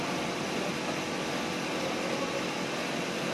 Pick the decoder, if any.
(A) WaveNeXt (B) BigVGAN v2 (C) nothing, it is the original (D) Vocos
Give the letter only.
C